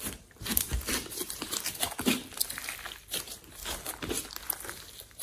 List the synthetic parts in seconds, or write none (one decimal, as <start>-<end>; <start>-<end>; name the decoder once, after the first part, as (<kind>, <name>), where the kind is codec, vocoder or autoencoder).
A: 0.0-3.6 (vocoder, BigVGAN v2); 4.7-5.2